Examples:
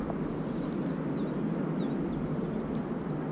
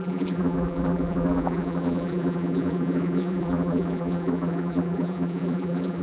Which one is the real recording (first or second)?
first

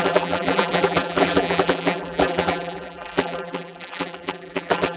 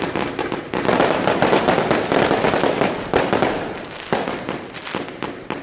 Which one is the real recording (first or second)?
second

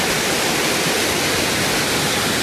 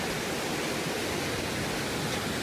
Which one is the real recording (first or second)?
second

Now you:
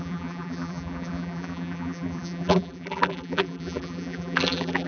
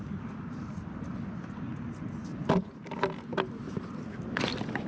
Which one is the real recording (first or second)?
second